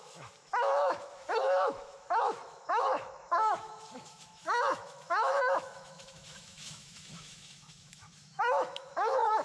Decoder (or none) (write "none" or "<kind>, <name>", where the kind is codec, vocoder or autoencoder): autoencoder, DAC-VAE